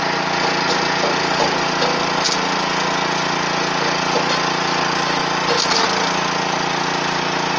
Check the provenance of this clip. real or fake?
real